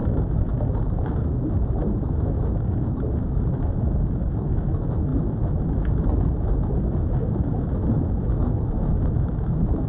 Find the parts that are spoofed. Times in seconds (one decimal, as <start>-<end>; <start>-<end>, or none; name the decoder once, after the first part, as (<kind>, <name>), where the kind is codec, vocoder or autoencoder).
none